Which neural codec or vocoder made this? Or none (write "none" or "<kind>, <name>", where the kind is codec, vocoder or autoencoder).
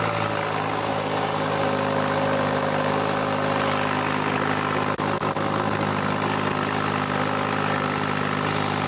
none